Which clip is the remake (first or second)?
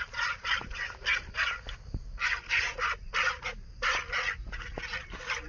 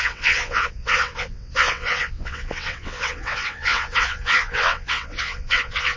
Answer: second